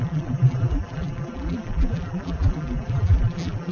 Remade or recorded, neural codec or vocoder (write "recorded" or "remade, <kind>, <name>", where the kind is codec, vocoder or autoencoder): remade, vocoder, BigVGAN v2